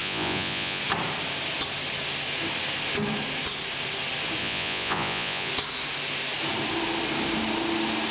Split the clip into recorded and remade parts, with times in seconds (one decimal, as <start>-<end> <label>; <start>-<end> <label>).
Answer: 0.0-0.8 remade; 0.8-4.4 recorded; 4.4-5.5 remade; 5.5-8.1 recorded